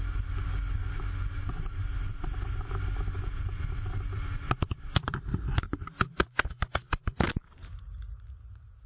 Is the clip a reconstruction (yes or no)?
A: no